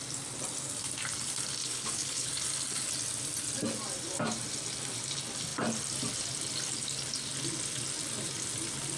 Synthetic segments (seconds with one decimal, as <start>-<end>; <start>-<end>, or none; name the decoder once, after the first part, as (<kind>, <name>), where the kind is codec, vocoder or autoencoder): 1.6-2.3 (codec, HILCodec)

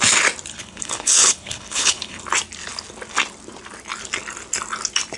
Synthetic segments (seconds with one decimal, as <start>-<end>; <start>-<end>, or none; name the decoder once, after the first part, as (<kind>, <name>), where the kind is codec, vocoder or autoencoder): 0.5-2.2 (codec, HILCodec)

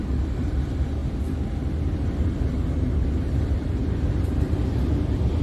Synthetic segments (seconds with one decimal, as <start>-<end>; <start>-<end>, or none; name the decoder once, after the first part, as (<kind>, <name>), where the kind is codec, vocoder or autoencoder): 0.0-1.0 (vocoder, BigVGAN v2); 4.2-5.4